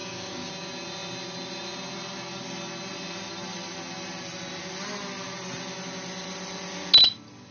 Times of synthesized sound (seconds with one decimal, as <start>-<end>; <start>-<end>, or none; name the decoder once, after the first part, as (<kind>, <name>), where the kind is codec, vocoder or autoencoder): 0.0-0.5 (codec, DAC)